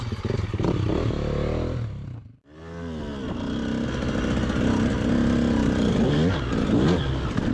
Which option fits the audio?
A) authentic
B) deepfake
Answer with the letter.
A